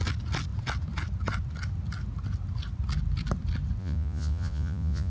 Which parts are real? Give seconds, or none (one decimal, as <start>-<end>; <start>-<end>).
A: 0.0-3.8